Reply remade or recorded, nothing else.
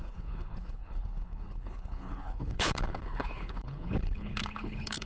remade